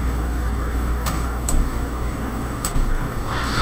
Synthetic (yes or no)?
yes